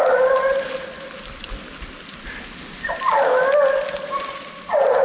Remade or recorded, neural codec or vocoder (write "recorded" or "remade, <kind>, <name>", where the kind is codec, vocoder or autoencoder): recorded